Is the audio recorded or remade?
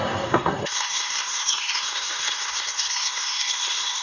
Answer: remade